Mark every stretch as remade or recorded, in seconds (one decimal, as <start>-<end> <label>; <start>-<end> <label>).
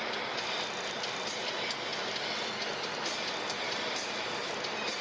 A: 0.0-5.0 recorded